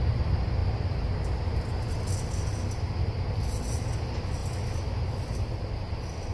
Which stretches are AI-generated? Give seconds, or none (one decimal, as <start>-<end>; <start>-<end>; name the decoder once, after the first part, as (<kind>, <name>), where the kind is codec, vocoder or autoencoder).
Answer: none